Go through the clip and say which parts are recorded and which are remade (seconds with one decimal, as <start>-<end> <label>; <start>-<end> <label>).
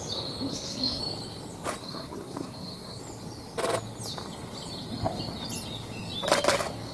0.0-0.5 recorded; 0.5-1.0 remade; 1.0-1.8 recorded; 1.8-3.0 remade; 3.0-6.9 recorded